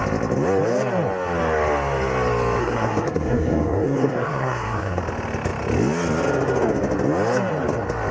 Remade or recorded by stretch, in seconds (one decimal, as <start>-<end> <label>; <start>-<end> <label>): 0.0-2.6 recorded; 2.6-5.0 remade; 5.0-8.1 recorded